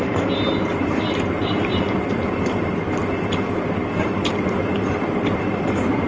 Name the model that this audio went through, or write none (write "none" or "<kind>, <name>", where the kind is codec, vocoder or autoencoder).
vocoder, BigVGAN v2